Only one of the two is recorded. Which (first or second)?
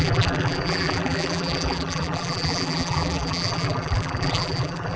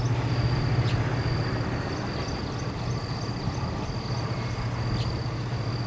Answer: second